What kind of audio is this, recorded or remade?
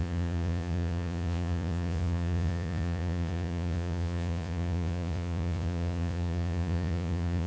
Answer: remade